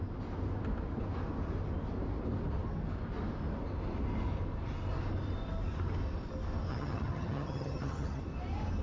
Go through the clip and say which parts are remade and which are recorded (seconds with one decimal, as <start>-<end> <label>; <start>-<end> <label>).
0.0-6.7 recorded; 6.7-8.2 remade; 8.2-8.8 recorded